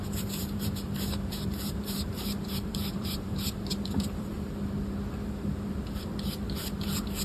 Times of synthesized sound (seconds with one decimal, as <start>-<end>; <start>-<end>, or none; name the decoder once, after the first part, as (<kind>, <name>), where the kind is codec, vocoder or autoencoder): 0.0-4.3 (vocoder, BigVGAN v2)